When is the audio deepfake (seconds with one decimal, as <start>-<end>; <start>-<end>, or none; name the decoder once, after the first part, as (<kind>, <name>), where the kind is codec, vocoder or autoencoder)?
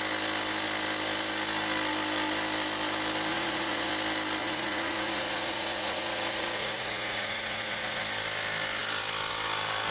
3.3-3.9 (vocoder, Vocos); 4.4-8.0